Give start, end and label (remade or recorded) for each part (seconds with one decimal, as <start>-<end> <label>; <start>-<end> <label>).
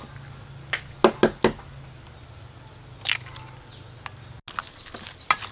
0.0-5.5 recorded